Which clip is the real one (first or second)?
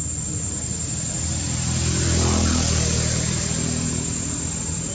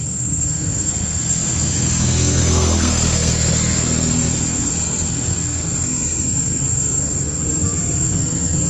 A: first